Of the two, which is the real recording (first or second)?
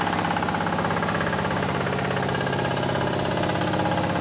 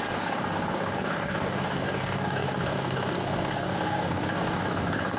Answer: first